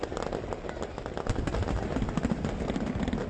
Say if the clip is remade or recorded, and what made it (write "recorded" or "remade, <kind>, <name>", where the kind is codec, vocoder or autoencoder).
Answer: recorded